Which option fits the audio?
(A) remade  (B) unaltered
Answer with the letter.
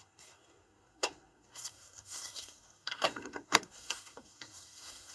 A